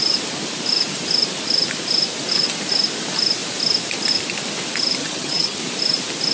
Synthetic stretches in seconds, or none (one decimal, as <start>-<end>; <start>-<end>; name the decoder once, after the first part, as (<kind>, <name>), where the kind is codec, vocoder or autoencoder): 5.0-5.6 (vocoder, HiFi-GAN)